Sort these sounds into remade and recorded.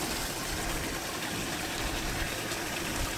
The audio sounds recorded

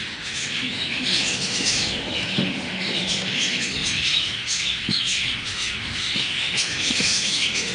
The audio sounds remade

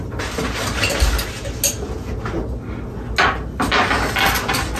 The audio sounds recorded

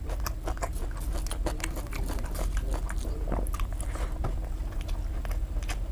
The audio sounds recorded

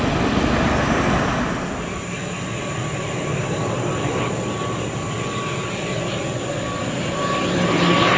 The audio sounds recorded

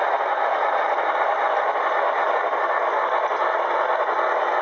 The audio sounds recorded